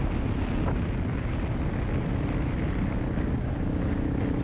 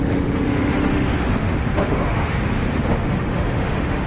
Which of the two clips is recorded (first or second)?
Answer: first